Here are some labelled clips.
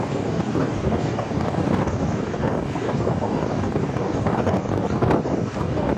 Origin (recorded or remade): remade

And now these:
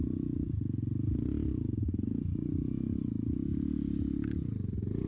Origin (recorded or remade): recorded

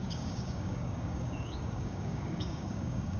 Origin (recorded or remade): remade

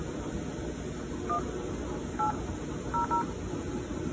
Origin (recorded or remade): recorded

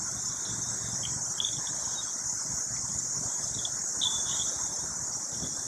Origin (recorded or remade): recorded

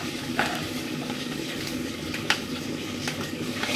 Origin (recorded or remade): remade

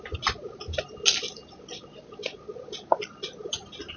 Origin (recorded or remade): recorded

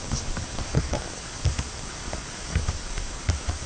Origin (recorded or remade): remade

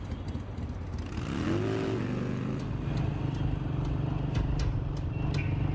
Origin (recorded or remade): recorded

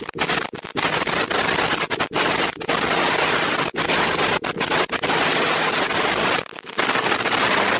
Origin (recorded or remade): recorded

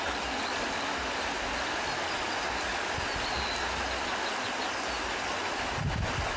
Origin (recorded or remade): recorded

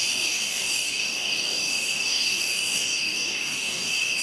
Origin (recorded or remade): remade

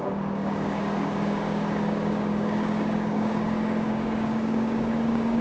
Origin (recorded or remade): remade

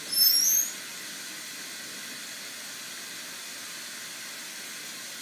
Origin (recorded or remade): recorded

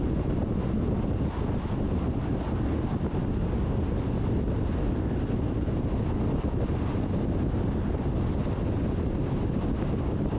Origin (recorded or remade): recorded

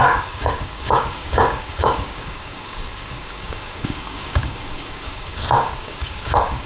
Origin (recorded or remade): remade